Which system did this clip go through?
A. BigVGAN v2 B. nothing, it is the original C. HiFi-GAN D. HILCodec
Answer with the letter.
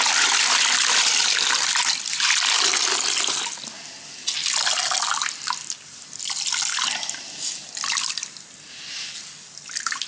B